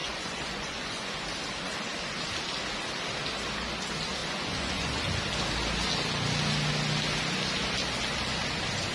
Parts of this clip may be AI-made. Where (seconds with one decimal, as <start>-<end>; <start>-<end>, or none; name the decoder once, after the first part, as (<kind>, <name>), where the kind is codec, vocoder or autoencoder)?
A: 0.0-1.2 (vocoder, Vocos); 4.2-5.0